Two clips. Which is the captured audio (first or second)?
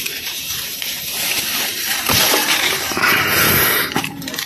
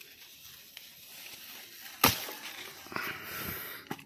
second